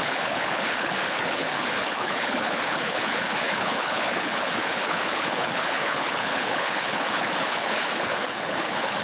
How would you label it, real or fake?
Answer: fake